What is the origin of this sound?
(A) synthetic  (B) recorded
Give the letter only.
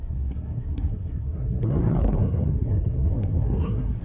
A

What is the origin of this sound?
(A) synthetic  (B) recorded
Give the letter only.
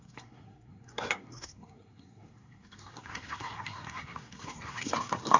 A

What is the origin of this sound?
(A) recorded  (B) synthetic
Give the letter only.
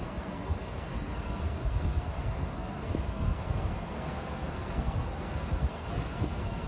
B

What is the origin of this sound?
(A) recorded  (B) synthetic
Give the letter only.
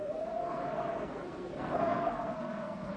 B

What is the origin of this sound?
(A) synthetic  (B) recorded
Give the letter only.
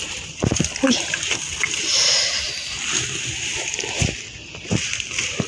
B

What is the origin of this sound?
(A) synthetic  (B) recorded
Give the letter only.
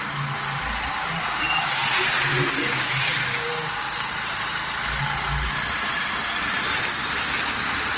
B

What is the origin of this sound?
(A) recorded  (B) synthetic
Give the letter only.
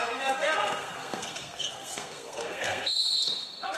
B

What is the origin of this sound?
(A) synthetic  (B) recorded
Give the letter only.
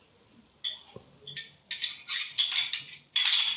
B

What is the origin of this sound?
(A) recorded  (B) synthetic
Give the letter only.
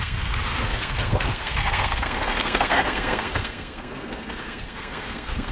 B